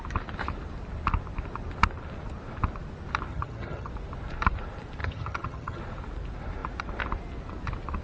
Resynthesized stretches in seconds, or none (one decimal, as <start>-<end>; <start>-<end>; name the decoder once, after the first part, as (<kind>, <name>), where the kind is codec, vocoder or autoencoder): 3.3-3.9 (vocoder, HiFi-GAN); 5.0-5.8